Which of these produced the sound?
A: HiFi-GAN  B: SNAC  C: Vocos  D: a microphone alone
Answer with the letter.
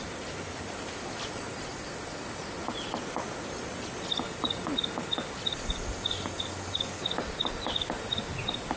D